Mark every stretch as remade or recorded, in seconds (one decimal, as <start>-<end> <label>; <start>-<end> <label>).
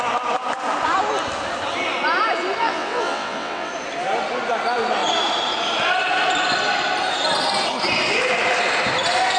0.0-2.6 recorded; 2.6-3.7 remade; 3.7-9.4 recorded